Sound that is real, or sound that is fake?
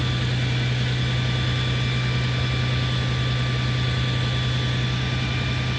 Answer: real